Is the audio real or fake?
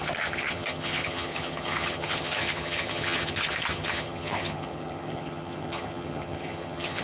fake